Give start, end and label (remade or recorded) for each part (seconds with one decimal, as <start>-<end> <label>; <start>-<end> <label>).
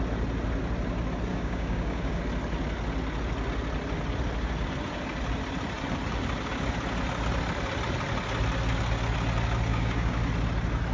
0.0-1.3 recorded; 1.3-2.2 remade; 2.2-9.7 recorded; 9.7-10.2 remade; 10.2-10.9 recorded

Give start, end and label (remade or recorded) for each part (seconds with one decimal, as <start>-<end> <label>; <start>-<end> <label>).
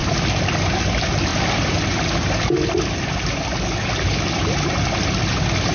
0.0-5.7 recorded